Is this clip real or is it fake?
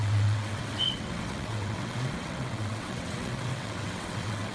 fake